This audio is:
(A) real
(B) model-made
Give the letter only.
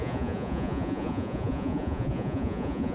B